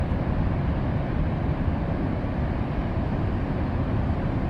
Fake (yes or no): no